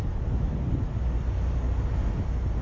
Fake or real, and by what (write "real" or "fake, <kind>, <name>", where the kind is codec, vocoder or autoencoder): real